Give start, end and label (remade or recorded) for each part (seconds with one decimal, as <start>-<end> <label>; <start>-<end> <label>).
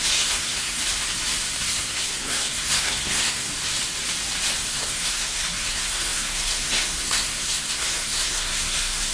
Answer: 0.0-0.8 remade; 0.8-1.6 recorded; 1.6-3.5 remade; 3.5-4.7 recorded; 4.7-9.1 remade